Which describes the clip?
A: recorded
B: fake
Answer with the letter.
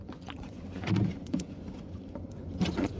B